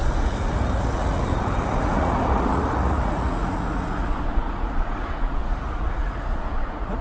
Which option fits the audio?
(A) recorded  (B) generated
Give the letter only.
B